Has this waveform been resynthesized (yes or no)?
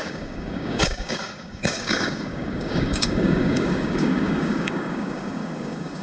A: yes